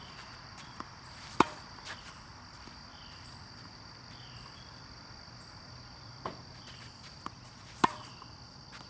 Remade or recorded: remade